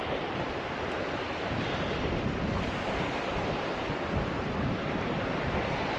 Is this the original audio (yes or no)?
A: yes